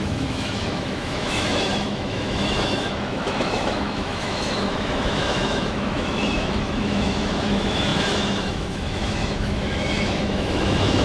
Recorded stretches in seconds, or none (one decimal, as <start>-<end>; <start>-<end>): none